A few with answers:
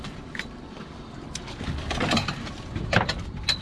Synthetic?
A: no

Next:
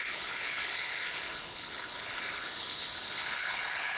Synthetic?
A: yes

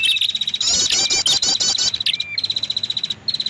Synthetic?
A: no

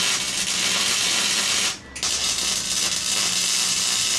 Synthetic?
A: no